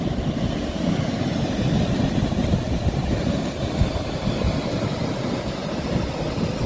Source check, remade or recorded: remade